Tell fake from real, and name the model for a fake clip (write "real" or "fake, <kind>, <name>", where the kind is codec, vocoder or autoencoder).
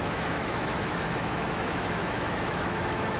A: fake, autoencoder, DAC-VAE